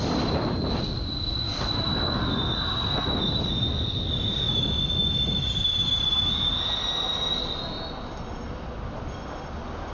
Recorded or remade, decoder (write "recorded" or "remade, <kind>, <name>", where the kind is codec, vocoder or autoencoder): recorded